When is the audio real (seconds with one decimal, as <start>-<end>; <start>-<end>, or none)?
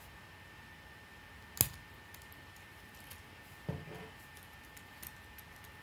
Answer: 0.0-5.8